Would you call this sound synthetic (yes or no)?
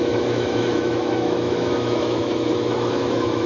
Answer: yes